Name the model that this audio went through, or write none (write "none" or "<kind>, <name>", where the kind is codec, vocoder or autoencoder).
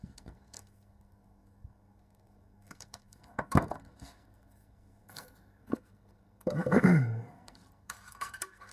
codec, SNAC